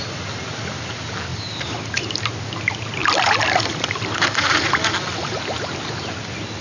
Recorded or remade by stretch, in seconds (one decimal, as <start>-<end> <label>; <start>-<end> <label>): 0.0-1.3 recorded; 1.3-2.2 remade; 2.2-3.0 recorded; 3.0-5.4 remade; 5.4-6.6 recorded